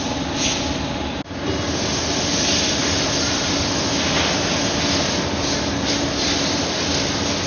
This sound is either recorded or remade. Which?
recorded